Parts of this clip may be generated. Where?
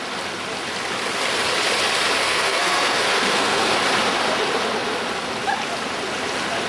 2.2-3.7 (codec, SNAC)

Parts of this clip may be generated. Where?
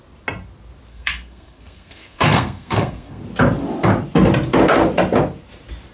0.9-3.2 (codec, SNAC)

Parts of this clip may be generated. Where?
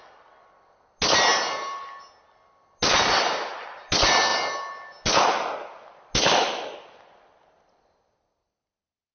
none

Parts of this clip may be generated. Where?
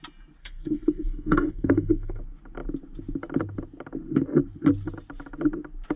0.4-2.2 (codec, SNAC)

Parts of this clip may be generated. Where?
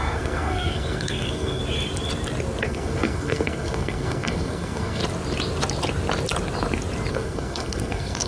0.0-1.6 (codec, SNAC); 2.6-5.0; 7.1-8.3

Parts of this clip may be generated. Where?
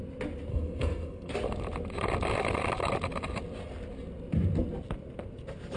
0.5-1.3 (codec, SNAC)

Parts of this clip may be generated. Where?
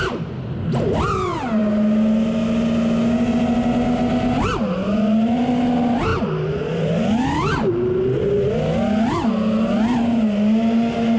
none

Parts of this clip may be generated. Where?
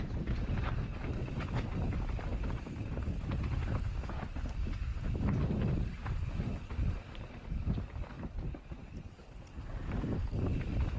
none